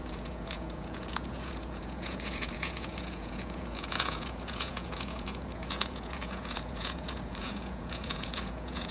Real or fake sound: fake